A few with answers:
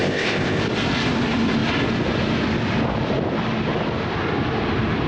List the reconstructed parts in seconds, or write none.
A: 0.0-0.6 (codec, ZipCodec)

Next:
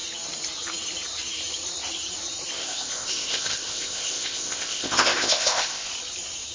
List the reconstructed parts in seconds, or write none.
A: 2.6-5.9 (codec, ZipCodec)

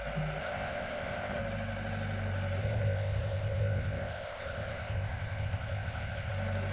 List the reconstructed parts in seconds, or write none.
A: 0.4-1.4 (codec, ZipCodec); 2.6-6.3